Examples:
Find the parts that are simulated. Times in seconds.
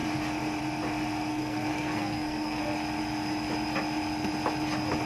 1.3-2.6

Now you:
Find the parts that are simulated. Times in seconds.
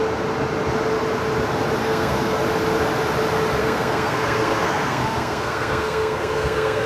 1.8-2.4; 3.6-6.9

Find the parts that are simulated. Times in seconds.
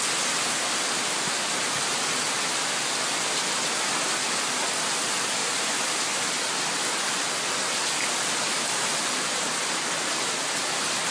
none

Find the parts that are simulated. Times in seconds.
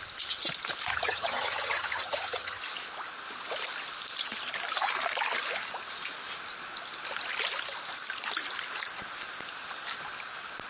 0.9-2.6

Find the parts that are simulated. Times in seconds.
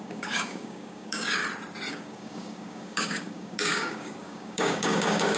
0.0-1.4; 1.9-5.4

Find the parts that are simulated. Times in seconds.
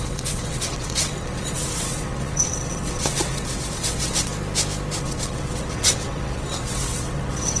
0.0-4.3; 5.0-7.6